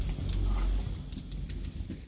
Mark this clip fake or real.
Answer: real